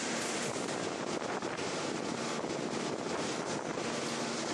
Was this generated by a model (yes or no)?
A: no